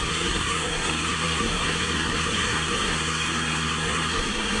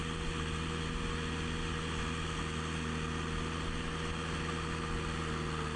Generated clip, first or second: first